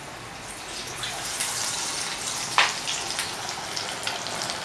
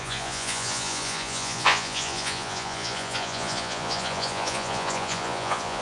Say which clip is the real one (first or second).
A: first